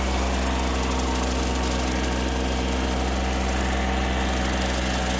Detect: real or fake real